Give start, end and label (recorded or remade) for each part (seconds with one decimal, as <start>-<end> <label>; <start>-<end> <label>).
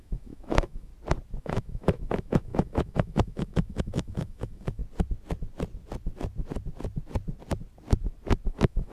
0.0-0.9 remade; 0.9-1.4 recorded; 1.4-4.8 remade; 4.8-8.5 recorded; 8.5-8.9 remade